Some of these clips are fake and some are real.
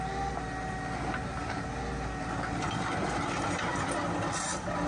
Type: real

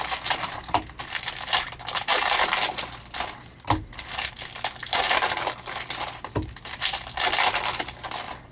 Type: real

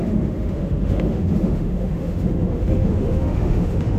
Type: fake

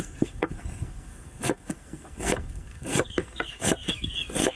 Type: fake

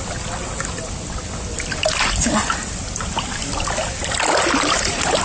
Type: real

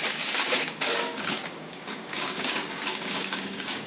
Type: fake